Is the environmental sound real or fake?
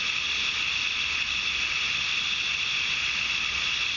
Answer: real